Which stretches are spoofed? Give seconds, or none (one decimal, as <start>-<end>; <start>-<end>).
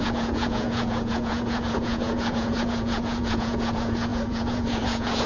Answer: 0.0-5.3